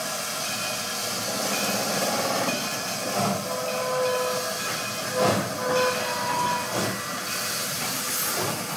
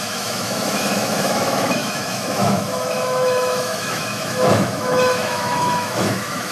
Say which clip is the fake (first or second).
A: second